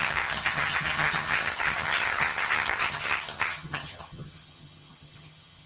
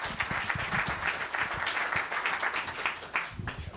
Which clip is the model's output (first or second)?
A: first